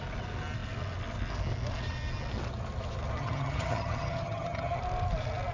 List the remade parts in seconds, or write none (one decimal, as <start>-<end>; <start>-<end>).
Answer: 3.2-4.8